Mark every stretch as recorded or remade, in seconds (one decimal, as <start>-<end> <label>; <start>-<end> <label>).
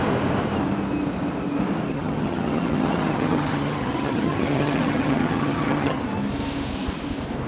0.0-1.9 recorded; 1.9-6.0 remade; 6.0-7.5 recorded